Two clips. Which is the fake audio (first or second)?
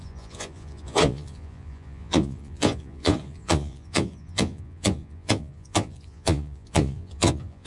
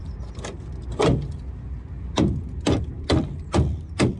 first